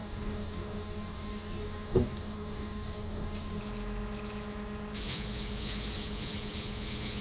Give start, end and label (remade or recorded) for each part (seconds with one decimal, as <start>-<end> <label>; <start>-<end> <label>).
0.0-3.6 remade; 3.6-7.2 recorded